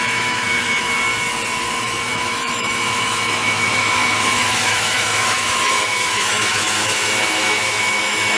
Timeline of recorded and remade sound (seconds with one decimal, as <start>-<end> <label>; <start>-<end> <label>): 0.0-1.0 remade; 1.0-1.6 recorded; 1.6-8.4 remade